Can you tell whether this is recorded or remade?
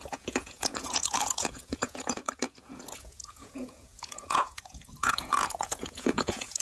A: remade